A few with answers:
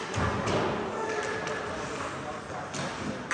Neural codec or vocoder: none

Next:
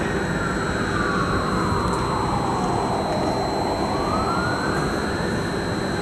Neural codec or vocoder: none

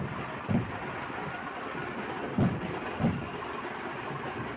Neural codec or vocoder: none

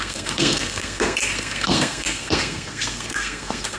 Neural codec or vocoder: codec, SNAC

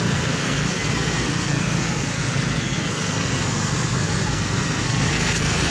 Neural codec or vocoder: codec, SNAC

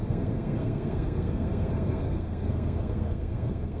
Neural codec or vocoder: codec, SNAC